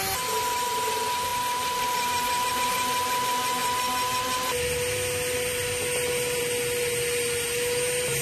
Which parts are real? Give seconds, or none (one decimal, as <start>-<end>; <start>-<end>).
0.0-8.2